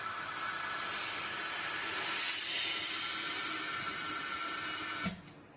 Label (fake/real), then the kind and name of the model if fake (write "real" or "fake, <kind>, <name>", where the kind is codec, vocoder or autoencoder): real